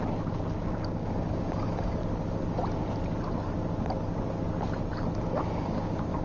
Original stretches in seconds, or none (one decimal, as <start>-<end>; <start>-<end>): 0.0-0.9; 2.0-5.4